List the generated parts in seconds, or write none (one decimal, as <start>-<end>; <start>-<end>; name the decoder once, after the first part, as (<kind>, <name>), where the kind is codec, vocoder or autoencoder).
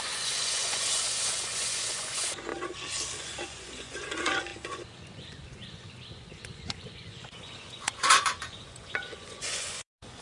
0.0-2.5 (vocoder, Vocos); 3.2-10.2